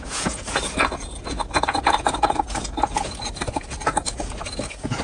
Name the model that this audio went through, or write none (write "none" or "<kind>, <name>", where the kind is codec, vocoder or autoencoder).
vocoder, Vocos